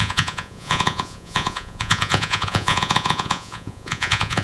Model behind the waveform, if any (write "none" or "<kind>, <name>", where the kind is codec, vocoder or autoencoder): vocoder, Vocos